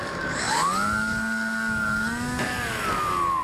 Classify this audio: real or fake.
fake